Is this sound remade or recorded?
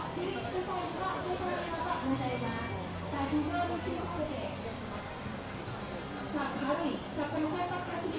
recorded